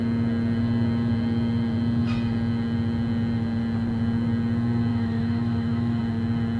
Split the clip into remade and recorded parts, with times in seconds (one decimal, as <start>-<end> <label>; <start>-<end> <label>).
0.0-4.9 recorded; 4.9-6.0 remade; 6.0-6.6 recorded